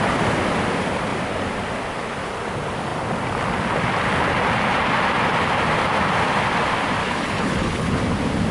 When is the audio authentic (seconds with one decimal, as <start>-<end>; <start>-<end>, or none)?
0.0-7.0; 8.0-8.5

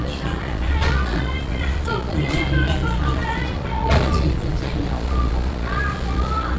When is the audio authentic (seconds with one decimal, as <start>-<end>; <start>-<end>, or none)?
none

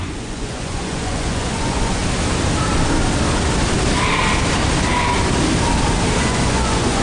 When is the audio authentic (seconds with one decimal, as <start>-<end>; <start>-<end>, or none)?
2.0-6.2

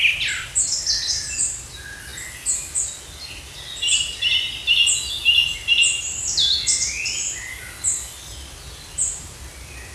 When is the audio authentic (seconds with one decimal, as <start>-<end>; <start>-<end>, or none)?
0.0-9.9

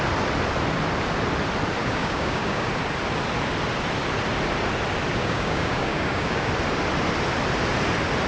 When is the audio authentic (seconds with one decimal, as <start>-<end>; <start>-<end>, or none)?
0.0-1.8; 2.7-5.2; 6.5-8.3

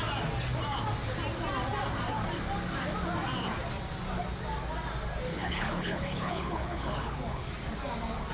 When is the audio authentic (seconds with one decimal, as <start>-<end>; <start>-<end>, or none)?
0.0-5.3; 7.4-8.3

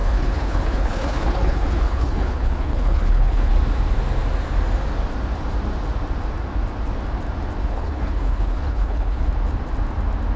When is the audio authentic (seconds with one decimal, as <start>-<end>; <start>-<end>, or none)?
3.5-7.6; 9.3-10.4

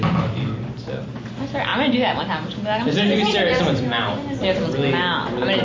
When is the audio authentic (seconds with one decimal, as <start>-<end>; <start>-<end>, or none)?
0.0-5.6